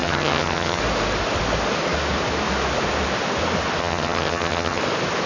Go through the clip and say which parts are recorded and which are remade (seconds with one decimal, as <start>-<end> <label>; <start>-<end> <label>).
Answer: 0.0-0.8 remade; 0.8-3.8 recorded; 3.8-4.8 remade; 4.8-5.3 recorded